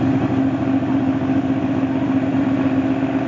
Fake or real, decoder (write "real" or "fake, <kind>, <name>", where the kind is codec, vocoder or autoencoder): real